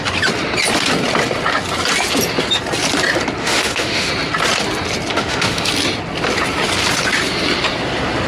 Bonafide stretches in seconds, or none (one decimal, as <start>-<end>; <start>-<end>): 0.0-3.4; 4.1-5.1; 5.7-8.3